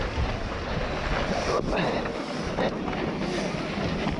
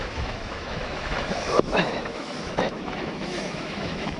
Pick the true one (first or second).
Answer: first